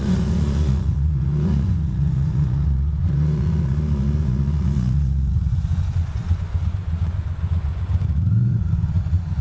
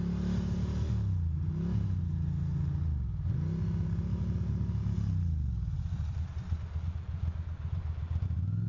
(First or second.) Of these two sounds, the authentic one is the second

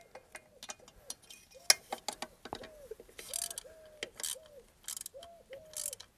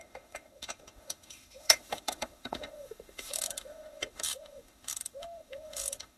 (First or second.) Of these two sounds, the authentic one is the first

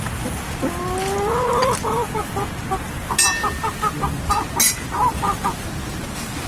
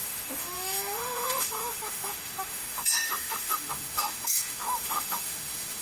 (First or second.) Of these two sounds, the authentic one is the first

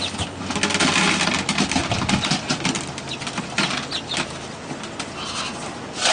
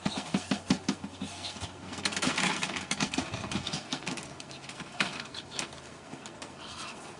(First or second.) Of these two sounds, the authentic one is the first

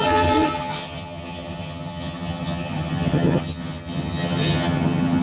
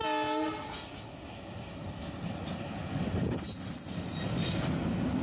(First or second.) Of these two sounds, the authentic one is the second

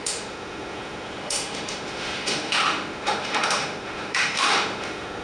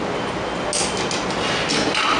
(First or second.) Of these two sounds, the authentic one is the second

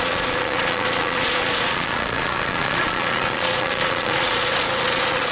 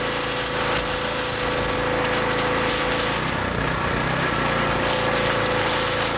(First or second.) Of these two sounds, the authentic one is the second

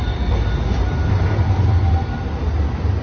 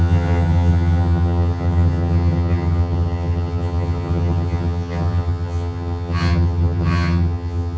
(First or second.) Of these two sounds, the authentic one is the first